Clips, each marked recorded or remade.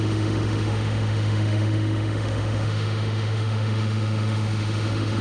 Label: remade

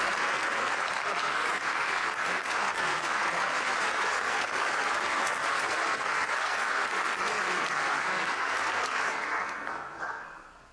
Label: remade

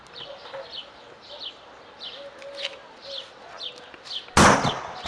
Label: recorded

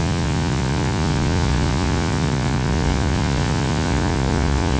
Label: remade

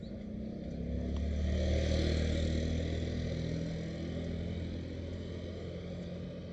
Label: recorded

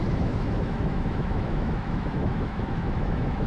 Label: remade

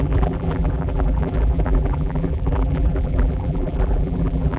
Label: remade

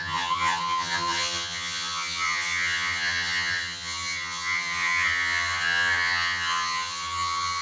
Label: remade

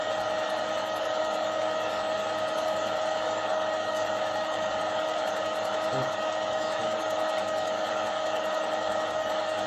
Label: remade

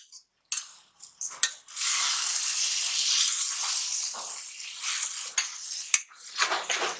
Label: recorded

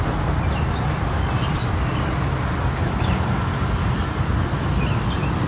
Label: recorded